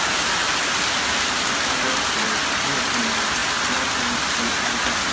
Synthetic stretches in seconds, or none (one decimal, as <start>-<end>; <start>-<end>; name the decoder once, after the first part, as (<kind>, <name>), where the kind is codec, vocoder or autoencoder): none